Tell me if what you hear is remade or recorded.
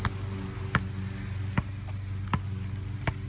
recorded